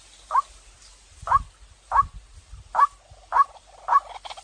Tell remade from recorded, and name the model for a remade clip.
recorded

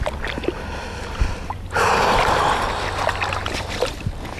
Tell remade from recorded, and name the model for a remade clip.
recorded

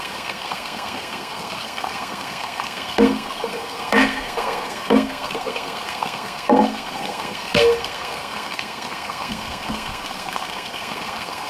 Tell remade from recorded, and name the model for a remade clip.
remade, codec, SNAC